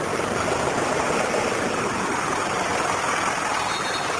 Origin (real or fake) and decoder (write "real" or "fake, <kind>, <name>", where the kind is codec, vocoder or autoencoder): real